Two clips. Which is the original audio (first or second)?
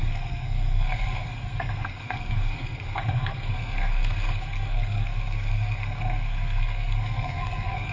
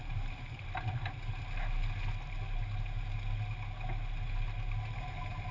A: second